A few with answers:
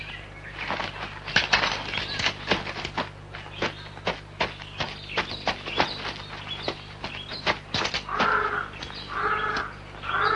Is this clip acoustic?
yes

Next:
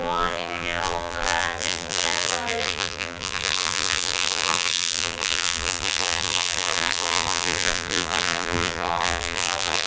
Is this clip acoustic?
no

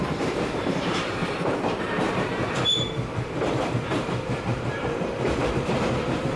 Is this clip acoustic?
no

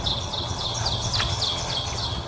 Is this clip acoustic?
no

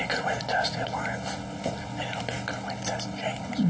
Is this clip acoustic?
yes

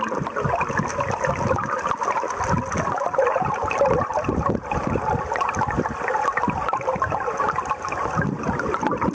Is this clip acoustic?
yes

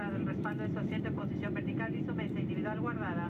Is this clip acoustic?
yes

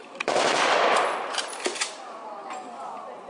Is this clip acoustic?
yes